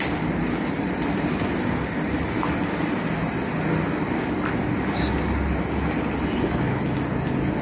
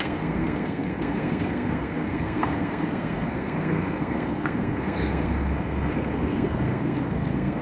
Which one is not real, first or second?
second